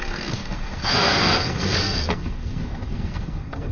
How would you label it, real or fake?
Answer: fake